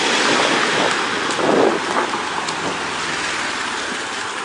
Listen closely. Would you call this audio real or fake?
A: real